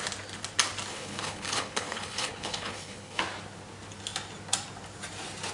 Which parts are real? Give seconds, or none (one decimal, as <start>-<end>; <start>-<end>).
0.0-0.9; 3.2-5.5